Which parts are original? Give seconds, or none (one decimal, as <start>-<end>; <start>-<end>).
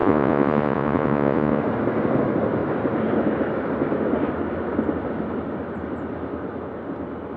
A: 1.6-7.4